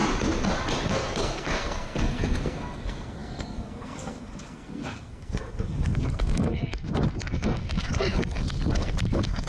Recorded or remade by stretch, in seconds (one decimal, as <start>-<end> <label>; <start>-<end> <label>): 0.0-0.9 recorded; 0.9-9.5 remade